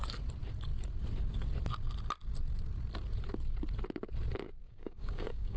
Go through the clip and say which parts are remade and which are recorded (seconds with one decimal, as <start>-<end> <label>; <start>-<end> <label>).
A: 0.0-4.6 recorded; 4.6-5.6 remade